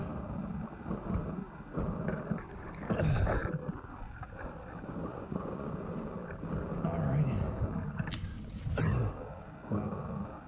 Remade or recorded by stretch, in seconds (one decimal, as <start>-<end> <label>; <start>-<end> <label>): 0.0-5.1 recorded; 5.1-5.7 remade; 5.7-10.5 recorded